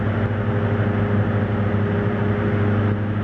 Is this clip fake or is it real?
real